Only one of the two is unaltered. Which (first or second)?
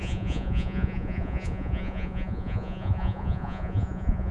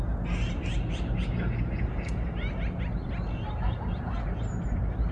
second